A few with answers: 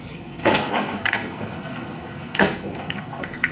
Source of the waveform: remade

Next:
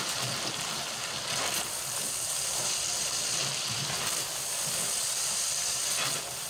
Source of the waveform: remade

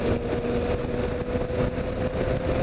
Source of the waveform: recorded